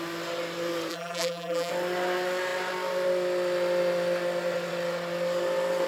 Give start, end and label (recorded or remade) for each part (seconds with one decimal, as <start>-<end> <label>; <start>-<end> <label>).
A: 0.0-0.9 recorded; 0.9-1.7 remade; 1.7-5.9 recorded